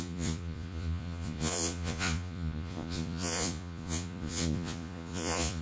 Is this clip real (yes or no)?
no